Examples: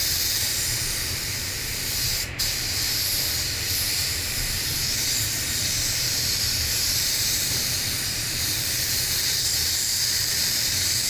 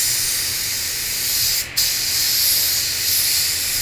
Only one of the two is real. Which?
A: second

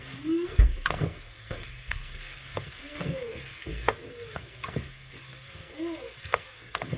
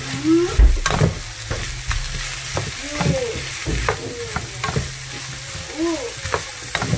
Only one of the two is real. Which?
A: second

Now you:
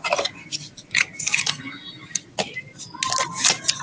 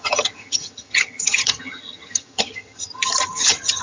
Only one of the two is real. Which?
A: first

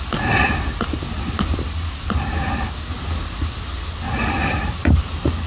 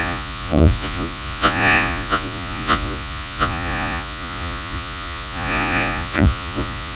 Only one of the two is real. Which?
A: first